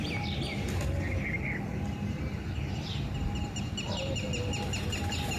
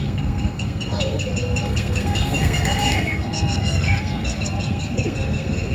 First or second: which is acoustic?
first